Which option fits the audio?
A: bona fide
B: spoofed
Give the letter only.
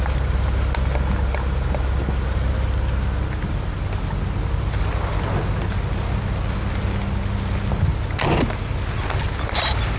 A